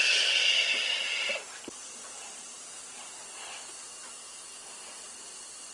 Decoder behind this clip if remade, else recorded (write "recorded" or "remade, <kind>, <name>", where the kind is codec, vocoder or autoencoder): recorded